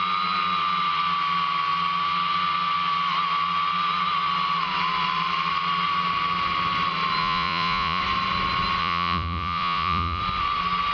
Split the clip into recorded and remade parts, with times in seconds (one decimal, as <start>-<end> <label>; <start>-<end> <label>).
0.0-7.2 recorded; 7.2-8.0 remade; 8.0-8.8 recorded; 8.8-10.2 remade; 10.2-10.9 recorded